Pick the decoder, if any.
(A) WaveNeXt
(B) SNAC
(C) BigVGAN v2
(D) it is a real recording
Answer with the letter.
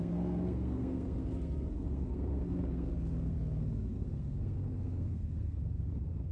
B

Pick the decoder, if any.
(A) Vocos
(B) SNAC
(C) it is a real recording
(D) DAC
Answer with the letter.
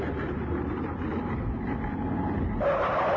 C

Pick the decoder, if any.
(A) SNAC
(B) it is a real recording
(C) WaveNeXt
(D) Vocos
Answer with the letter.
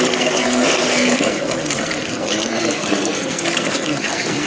A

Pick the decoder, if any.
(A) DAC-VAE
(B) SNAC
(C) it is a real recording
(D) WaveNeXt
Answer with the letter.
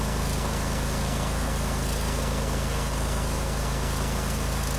B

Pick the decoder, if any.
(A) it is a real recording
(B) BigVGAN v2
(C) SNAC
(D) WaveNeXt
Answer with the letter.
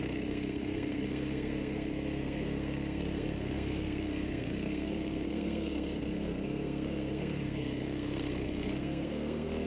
C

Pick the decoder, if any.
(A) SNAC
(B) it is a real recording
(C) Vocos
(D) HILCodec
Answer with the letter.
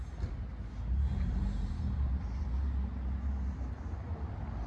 B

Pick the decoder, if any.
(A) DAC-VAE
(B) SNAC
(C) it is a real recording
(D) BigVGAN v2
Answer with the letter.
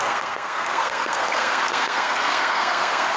B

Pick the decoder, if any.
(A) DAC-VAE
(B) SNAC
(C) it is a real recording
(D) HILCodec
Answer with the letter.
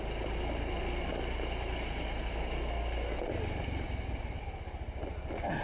C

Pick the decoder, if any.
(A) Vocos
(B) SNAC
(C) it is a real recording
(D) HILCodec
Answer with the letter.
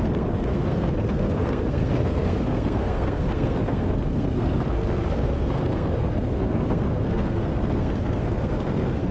B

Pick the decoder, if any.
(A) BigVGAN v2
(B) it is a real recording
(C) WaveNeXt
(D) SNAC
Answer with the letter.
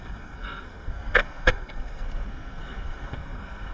D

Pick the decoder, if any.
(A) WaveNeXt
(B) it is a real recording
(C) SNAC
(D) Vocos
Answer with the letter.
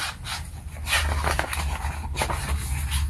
B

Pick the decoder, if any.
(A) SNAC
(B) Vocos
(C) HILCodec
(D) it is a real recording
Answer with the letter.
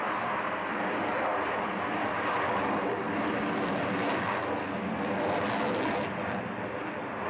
D